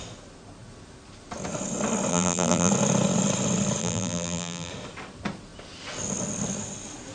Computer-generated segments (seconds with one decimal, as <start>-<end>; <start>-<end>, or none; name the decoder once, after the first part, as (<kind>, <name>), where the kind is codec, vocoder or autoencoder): 2.1-2.7 (vocoder, BigVGAN v2); 3.8-4.7